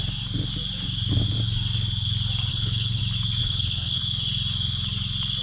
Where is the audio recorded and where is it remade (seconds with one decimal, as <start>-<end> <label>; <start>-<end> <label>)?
0.0-2.5 recorded; 2.5-3.0 remade; 3.0-3.4 recorded; 3.4-4.0 remade; 4.0-5.4 recorded